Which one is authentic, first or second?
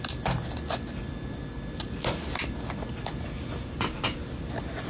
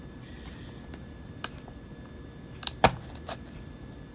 first